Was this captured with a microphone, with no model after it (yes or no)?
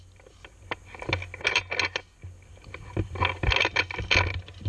yes